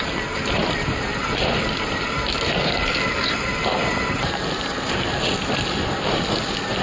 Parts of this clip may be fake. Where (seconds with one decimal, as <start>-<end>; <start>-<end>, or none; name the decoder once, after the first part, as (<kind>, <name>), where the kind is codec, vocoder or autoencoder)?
none